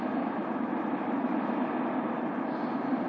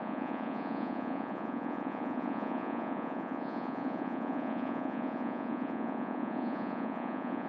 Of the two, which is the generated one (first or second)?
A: second